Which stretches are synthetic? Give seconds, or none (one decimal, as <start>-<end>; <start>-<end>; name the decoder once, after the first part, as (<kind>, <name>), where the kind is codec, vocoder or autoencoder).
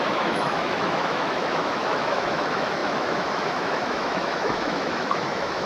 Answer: 0.0-5.7 (autoencoder, DAC-VAE)